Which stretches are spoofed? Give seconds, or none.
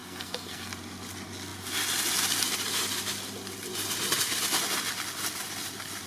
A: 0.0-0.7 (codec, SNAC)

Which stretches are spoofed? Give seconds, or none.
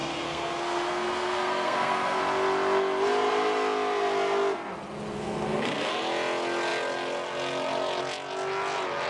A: 0.0-2.2 (codec, SNAC); 5.1-5.9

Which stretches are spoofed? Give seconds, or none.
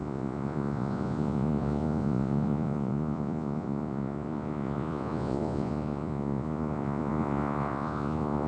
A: 0.0-8.5 (vocoder, Vocos)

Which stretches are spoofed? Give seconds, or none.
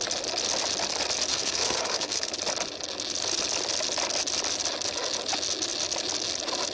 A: 1.3-2.3 (codec, SNAC)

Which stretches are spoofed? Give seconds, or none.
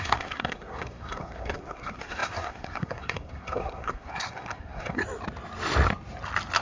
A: 0.0-5.0 (codec, SNAC)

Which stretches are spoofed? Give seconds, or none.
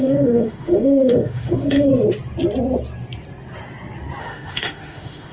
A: 0.0-1.9 (autoencoder, DAC-VAE); 4.2-5.3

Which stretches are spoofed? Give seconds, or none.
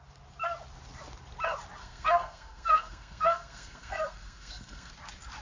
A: 1.8-4.9 (codec, SNAC)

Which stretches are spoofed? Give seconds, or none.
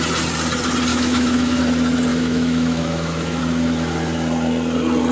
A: 0.9-1.6 (autoencoder, DAC-VAE); 2.1-3.4